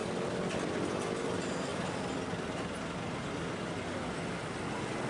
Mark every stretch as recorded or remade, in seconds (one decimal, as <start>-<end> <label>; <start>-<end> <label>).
0.0-5.1 recorded

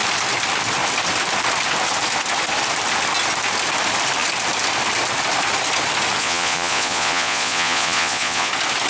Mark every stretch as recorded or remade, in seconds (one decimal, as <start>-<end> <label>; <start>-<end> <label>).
0.0-6.2 recorded; 6.2-8.5 remade; 8.5-8.9 recorded

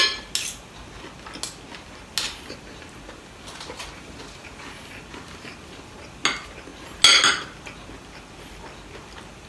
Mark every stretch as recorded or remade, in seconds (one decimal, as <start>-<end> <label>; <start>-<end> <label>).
0.0-9.5 recorded

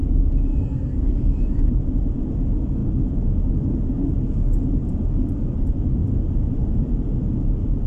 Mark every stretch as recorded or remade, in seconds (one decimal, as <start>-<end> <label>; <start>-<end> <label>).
0.0-0.5 recorded; 0.5-1.3 remade; 1.3-7.9 recorded

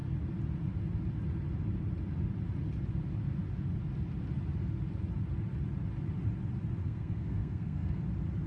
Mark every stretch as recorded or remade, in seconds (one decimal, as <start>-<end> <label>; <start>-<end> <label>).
0.0-6.8 recorded; 6.8-8.0 remade; 8.0-8.5 recorded

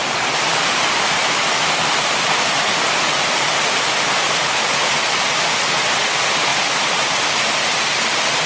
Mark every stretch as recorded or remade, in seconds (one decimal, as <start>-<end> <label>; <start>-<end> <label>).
0.0-4.9 remade; 4.9-6.5 recorded; 6.5-7.2 remade; 7.2-8.5 recorded